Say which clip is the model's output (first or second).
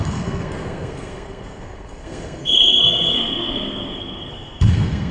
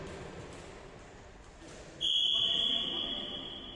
first